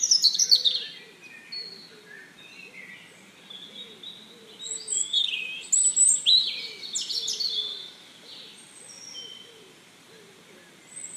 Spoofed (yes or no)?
no